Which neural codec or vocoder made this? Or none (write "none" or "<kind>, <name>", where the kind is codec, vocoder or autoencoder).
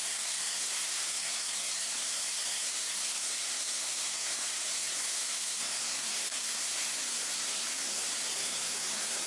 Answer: codec, SNAC